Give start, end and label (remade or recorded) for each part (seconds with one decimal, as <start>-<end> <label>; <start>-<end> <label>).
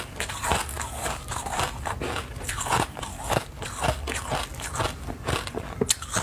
0.0-1.0 recorded; 1.0-1.6 remade; 1.6-3.1 recorded; 3.1-3.6 remade; 3.6-6.2 recorded